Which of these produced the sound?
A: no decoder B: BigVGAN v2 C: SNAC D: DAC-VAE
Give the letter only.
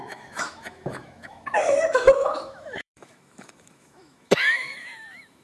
D